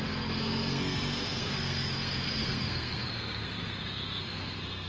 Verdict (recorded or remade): remade